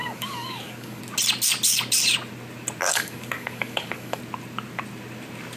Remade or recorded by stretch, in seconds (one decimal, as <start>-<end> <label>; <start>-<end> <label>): 0.0-1.0 remade; 1.0-2.8 recorded; 2.8-4.2 remade; 4.2-5.6 recorded